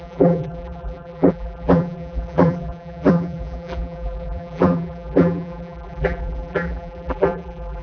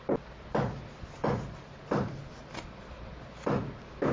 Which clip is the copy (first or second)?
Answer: first